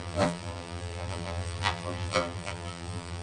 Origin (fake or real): fake